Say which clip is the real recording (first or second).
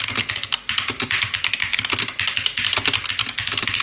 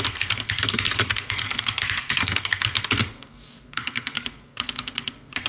first